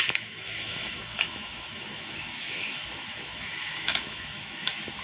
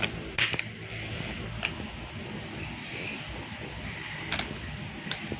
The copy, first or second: first